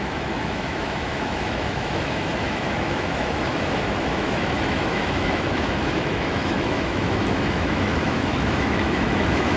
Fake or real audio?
fake